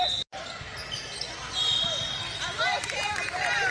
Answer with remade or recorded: recorded